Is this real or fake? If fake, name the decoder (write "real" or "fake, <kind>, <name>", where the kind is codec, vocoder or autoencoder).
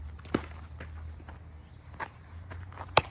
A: real